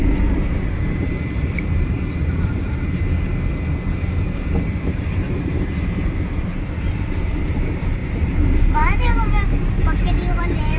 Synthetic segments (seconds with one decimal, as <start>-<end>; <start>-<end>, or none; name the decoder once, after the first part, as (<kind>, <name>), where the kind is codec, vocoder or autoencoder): 0.0-3.0 (vocoder, BigVGAN v2); 4.7-10.8